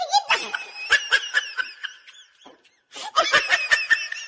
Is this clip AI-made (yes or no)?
no